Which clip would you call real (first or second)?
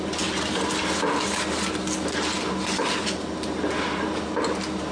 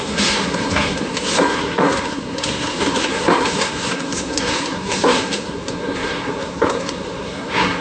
first